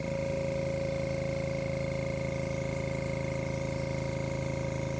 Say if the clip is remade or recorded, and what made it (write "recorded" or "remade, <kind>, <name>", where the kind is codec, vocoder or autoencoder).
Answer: recorded